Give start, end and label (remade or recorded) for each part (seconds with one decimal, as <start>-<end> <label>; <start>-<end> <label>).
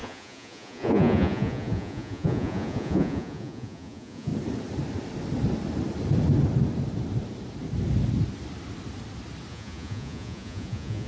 0.0-4.3 remade; 4.3-9.5 recorded; 9.5-11.1 remade